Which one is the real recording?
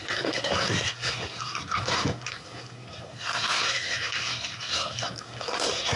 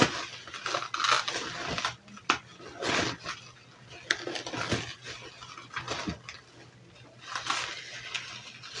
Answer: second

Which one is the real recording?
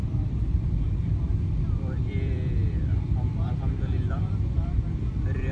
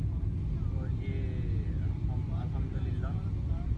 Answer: second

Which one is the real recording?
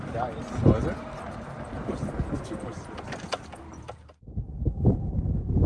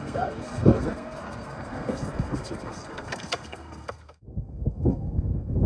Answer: first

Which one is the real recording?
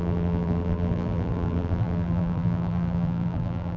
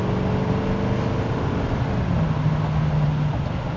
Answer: second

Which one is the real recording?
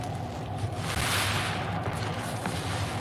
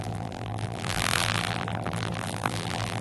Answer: first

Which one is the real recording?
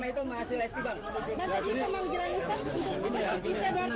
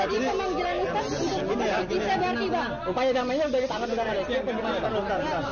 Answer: second